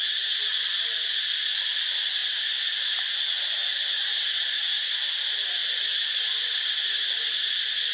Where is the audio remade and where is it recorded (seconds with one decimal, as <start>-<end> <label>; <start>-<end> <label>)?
0.0-2.2 recorded; 2.2-2.9 remade; 2.9-3.6 recorded; 3.6-5.1 remade; 5.1-5.6 recorded; 5.6-7.4 remade; 7.4-7.9 recorded